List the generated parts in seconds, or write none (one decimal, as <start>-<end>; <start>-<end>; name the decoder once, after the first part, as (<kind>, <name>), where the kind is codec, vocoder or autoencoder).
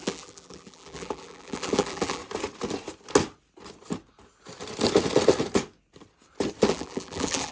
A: 0.0-2.2 (vocoder, BigVGAN v2); 6.7-7.5